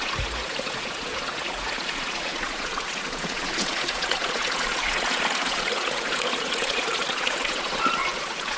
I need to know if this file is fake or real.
fake